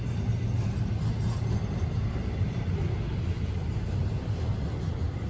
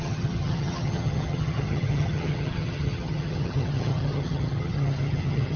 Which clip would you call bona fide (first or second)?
first